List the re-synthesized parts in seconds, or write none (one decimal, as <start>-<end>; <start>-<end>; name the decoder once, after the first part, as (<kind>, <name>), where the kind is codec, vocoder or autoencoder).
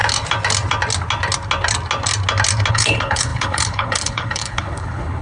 2.7-5.2 (codec, HILCodec)